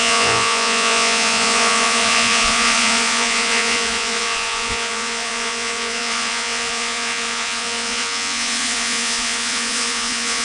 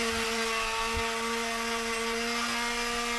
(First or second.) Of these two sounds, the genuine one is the second